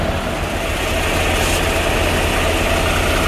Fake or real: real